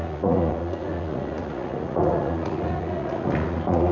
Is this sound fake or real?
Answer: fake